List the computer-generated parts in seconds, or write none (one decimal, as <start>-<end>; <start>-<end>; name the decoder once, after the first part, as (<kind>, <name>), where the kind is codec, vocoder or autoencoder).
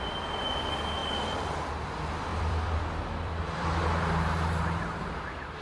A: 2.3-5.6 (vocoder, BigVGAN v2)